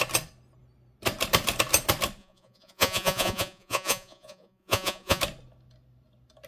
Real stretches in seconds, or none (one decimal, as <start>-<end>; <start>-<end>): 0.0-2.2; 5.2-6.5